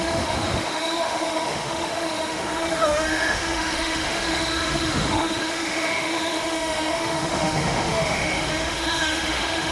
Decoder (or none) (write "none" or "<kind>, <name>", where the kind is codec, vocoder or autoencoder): autoencoder, DAC-VAE